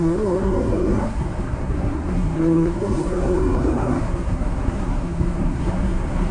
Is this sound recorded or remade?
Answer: remade